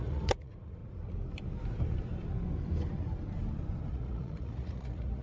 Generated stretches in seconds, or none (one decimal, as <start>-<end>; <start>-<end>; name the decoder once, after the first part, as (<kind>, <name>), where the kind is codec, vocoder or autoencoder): 0.0-0.8 (vocoder, Vocos); 3.9-5.2

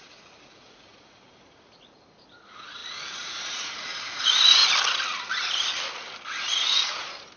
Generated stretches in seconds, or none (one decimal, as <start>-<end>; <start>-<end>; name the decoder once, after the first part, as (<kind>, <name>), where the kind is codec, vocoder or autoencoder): 0.0-4.6 (vocoder, Vocos); 6.4-7.4

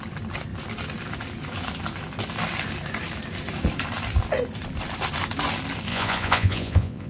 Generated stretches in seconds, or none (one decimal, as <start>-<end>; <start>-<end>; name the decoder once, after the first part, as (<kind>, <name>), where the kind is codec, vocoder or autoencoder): 5.9-7.1 (vocoder, Vocos)

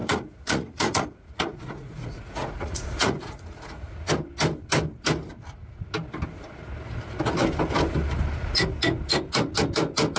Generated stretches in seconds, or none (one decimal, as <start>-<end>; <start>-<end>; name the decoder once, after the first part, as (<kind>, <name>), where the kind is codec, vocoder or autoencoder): 0.0-4.1 (vocoder, Vocos)

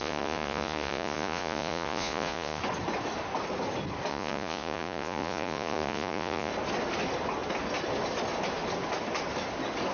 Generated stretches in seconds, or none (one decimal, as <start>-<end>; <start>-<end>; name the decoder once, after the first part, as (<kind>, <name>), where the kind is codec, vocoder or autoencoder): 0.0-2.6 (vocoder, Vocos); 4.1-6.5

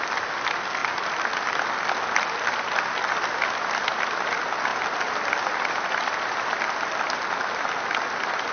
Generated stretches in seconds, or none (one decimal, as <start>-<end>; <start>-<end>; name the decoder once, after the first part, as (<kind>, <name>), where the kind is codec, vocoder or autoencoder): none

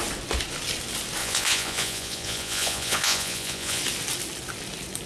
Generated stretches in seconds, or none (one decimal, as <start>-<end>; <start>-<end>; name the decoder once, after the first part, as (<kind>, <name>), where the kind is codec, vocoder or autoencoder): 1.2-3.8 (vocoder, Vocos)

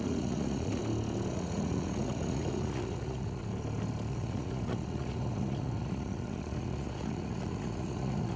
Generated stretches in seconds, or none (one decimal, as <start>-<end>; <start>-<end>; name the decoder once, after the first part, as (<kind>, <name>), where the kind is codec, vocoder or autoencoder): 0.0-0.8 (vocoder, Vocos); 1.3-3.4; 4.1-8.4